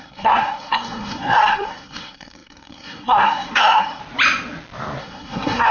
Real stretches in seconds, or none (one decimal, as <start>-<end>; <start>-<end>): 4.0-5.0